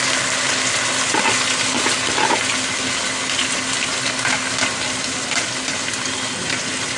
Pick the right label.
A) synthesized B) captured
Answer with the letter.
B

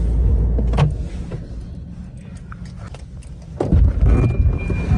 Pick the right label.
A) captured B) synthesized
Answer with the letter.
A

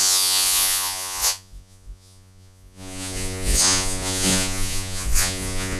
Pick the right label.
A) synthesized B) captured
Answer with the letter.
A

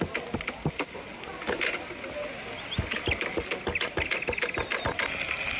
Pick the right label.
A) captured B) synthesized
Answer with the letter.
A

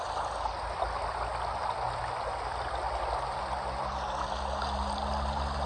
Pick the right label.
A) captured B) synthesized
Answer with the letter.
A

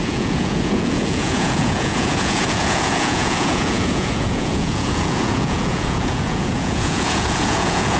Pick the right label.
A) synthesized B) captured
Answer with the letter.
A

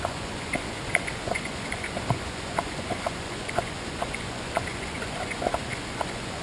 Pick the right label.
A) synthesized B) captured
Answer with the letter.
A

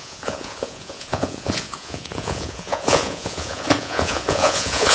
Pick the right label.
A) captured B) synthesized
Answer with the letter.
B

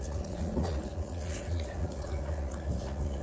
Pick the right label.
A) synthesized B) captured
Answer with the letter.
A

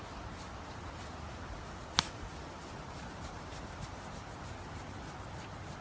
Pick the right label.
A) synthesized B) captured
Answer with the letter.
B